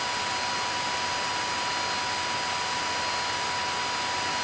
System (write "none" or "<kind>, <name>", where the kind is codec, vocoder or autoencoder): none